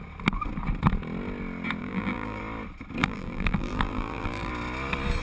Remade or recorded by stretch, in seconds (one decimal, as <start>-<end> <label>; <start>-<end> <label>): 0.0-1.8 recorded; 1.8-2.4 remade; 2.4-3.0 recorded; 3.0-4.5 remade; 4.5-5.2 recorded